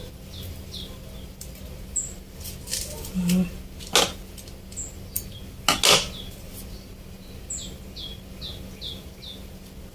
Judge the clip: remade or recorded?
recorded